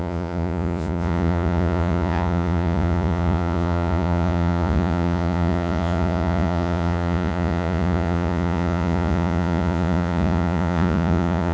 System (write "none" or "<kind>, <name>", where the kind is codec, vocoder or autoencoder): vocoder, Vocos